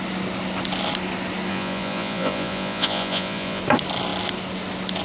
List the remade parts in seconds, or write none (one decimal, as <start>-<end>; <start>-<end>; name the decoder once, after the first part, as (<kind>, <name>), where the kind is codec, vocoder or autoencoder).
1.5-3.6 (vocoder, Vocos)